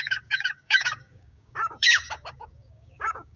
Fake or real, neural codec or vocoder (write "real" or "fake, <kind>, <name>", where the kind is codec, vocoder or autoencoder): fake, codec, DAC